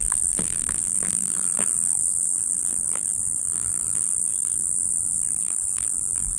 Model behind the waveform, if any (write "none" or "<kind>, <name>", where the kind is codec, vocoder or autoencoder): vocoder, BigVGAN v2